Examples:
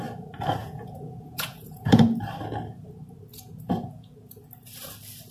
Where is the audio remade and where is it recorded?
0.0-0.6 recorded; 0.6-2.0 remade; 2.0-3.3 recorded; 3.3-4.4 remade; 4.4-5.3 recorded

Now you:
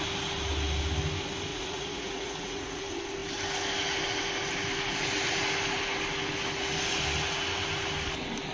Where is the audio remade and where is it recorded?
0.0-1.5 recorded; 1.5-2.8 remade; 2.8-8.5 recorded

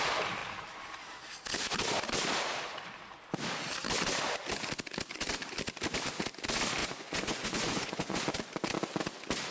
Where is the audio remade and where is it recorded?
0.0-6.8 recorded; 6.8-8.2 remade; 8.2-9.5 recorded

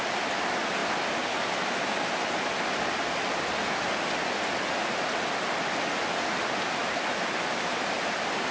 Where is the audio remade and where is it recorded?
0.0-8.5 recorded

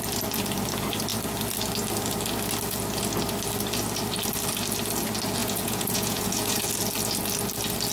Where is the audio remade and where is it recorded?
0.0-5.4 recorded; 5.4-6.6 remade; 6.6-7.9 recorded

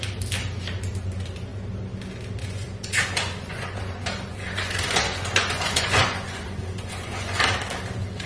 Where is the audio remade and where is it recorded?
0.0-2.4 recorded; 2.4-7.4 remade; 7.4-8.3 recorded

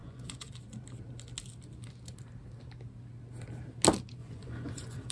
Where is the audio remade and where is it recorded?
0.0-0.5 remade; 0.5-4.2 recorded; 4.2-5.1 remade

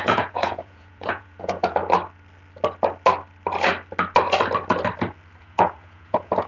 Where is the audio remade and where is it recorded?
0.0-1.8 remade; 1.8-5.4 recorded; 5.4-6.5 remade